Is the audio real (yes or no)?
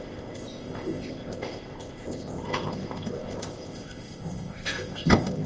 no